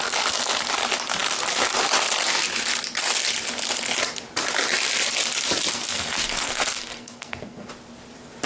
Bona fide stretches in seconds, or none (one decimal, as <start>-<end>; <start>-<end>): 0.0-5.7; 7.7-8.5